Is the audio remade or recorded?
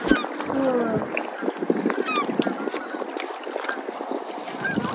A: recorded